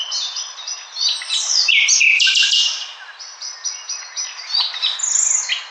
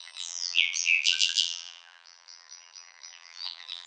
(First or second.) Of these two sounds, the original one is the first